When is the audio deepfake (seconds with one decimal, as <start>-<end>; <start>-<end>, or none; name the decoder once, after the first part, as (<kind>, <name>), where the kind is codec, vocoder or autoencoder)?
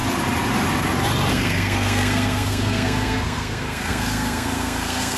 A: 1.3-5.2 (codec, SNAC)